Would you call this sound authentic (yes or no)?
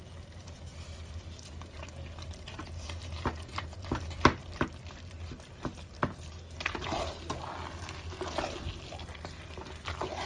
yes